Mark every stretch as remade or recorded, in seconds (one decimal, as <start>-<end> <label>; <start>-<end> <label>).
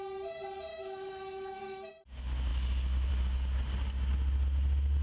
0.0-0.7 recorded; 0.7-1.9 remade; 1.9-5.0 recorded